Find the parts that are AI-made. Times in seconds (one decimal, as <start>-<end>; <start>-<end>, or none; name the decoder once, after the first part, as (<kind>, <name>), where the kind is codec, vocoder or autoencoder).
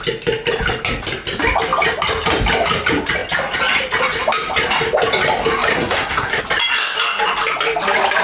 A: 5.7-6.4 (codec, SNAC)